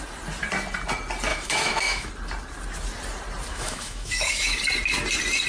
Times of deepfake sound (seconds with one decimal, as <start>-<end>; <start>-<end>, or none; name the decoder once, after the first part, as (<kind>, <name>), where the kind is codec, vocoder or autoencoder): 1.3-2.1 (autoencoder, DAC-VAE); 3.5-4.6